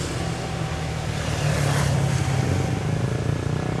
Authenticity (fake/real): real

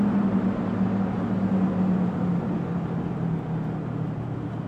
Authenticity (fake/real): real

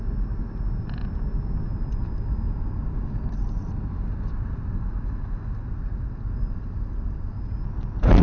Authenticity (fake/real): real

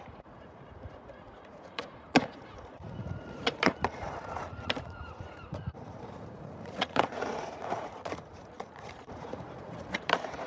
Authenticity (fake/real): fake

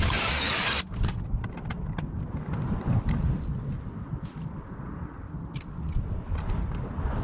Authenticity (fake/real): real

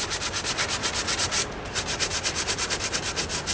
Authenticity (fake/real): real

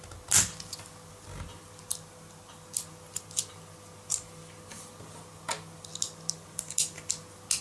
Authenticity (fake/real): real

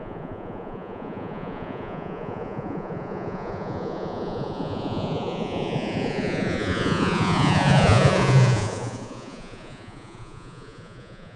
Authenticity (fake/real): fake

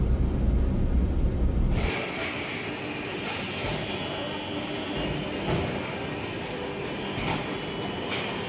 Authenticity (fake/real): real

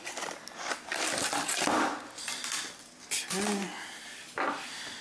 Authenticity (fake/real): real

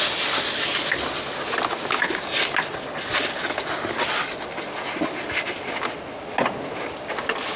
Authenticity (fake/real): real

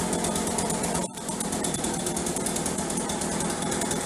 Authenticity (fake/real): fake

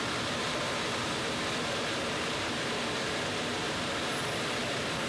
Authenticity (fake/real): fake